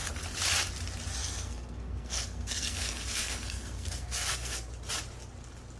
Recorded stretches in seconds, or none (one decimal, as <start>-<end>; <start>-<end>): 0.0-1.2; 4.7-5.8